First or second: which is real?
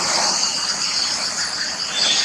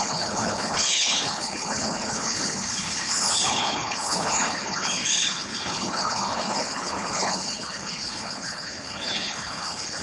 first